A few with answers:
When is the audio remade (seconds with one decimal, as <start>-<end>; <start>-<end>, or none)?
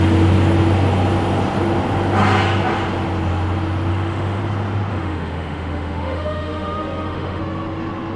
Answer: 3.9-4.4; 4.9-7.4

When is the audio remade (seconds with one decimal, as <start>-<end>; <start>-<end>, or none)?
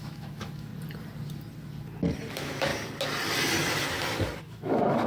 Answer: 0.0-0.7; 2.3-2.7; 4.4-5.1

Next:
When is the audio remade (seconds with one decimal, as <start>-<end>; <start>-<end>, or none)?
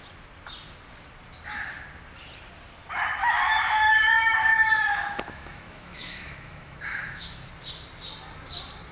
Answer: 3.2-7.5